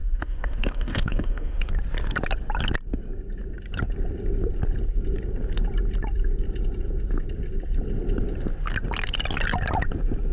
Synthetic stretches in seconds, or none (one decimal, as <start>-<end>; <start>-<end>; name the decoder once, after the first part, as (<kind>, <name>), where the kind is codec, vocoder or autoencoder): 0.0-1.7 (autoencoder, DAC-VAE)